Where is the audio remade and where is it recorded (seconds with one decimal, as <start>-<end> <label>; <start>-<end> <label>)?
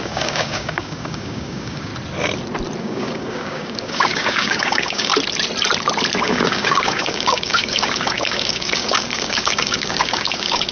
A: 0.0-1.9 remade; 1.9-2.8 recorded; 2.8-5.1 remade; 5.1-6.2 recorded; 6.2-10.7 remade